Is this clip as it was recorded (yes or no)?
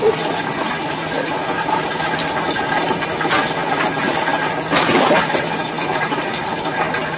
yes